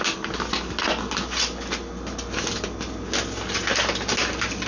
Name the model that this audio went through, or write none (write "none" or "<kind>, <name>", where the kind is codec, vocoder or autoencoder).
none